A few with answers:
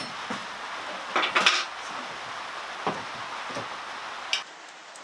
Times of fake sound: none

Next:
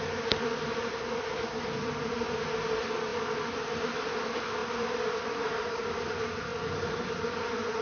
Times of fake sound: 4.6-5.9 (vocoder, BigVGAN v2)

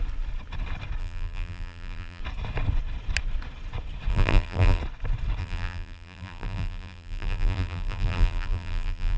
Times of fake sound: 1.0-2.2 (vocoder, BigVGAN v2); 4.1-4.8; 5.4-9.2

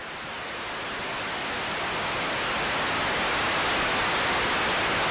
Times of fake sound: none

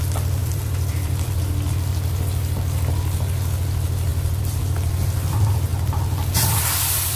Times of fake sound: 0.4-1.4 (vocoder, BigVGAN v2); 4.1-4.6